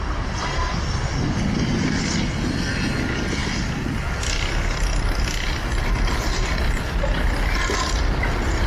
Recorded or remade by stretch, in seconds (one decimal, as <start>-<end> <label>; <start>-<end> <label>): 0.0-8.7 recorded